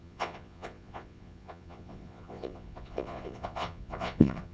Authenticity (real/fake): fake